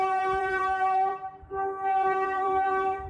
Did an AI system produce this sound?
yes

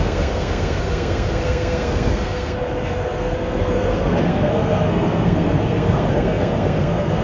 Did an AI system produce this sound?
yes